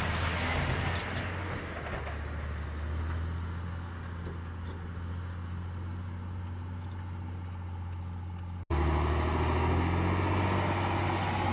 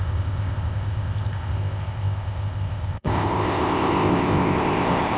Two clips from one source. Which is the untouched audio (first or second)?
first